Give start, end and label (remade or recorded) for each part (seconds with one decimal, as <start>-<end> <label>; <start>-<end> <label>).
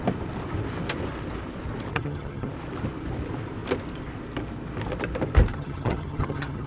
0.0-1.9 recorded; 1.9-2.5 remade; 2.5-5.5 recorded; 5.5-6.7 remade